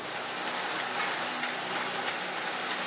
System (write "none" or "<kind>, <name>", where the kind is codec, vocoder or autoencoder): none